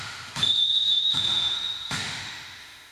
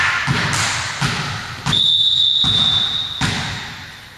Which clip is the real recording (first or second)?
second